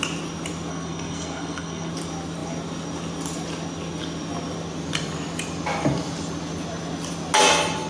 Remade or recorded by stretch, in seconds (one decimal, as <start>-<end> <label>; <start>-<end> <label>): 0.0-0.7 recorded; 0.7-1.9 remade; 1.9-7.9 recorded